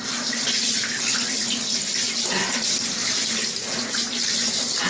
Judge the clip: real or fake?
real